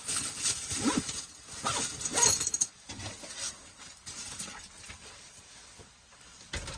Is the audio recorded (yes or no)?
yes